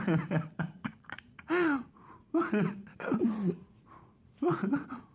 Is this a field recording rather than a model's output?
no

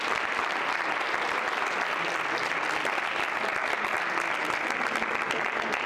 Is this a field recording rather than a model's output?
yes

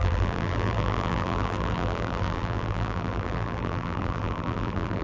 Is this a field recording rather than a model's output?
no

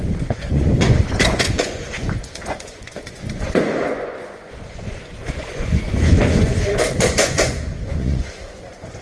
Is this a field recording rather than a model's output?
no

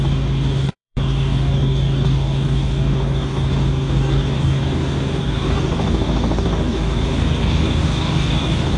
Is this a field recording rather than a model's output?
no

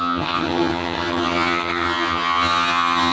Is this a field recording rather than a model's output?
no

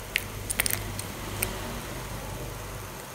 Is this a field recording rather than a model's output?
yes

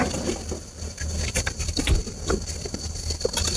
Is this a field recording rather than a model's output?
yes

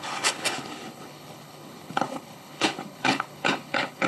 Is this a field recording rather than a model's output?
no